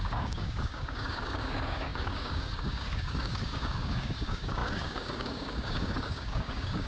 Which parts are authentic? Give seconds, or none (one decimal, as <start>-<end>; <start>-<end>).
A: none